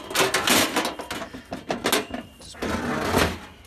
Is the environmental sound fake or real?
real